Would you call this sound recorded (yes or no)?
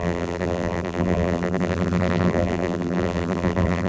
no